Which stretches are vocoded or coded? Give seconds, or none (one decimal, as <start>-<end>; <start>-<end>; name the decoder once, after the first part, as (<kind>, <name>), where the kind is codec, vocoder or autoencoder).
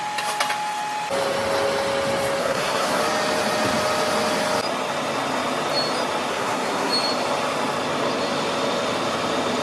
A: 2.4-3.0 (codec, SNAC); 6.3-6.9